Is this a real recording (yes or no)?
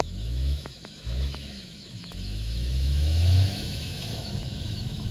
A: no